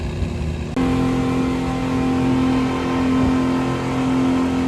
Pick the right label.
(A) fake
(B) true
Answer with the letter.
B